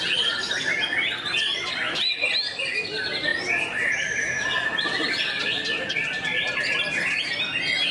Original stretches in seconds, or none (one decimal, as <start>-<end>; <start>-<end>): 0.0-7.9